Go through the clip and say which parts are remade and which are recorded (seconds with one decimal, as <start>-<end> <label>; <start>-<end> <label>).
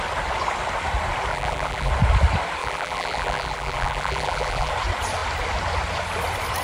0.0-1.3 recorded; 1.3-1.9 remade; 1.9-2.6 recorded; 2.6-4.7 remade; 4.7-6.6 recorded